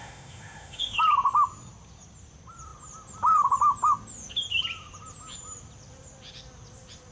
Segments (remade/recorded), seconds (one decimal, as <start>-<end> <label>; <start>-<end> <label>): 0.0-1.0 remade; 1.0-7.1 recorded